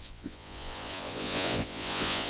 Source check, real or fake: fake